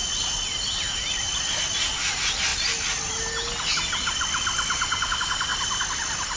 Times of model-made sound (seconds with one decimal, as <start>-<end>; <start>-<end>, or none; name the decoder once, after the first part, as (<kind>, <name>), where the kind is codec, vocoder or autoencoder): none

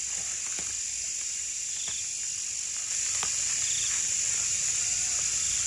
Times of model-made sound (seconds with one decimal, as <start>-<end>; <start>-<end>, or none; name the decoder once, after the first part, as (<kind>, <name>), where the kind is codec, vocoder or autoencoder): 4.5-5.2 (vocoder, BigVGAN v2)

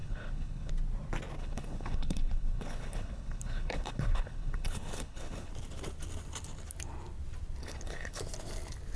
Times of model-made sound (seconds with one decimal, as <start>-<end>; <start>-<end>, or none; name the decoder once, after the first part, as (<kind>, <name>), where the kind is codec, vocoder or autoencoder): 0.0-0.7 (codec, HILCodec); 1.4-5.5; 7.6-8.2

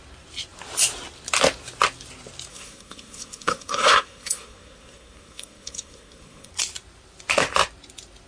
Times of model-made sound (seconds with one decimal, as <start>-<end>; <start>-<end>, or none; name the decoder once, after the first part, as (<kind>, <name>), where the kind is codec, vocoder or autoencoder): 2.5-6.5 (codec, SNAC)

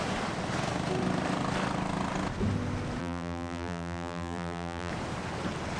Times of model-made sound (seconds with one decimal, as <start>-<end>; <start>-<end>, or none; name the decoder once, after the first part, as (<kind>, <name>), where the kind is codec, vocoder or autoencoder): 3.0-4.9 (vocoder, BigVGAN v2)

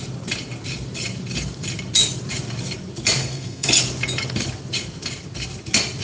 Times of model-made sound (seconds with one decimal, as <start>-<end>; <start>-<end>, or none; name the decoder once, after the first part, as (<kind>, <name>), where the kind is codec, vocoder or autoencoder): 3.2-3.7 (codec, SNAC)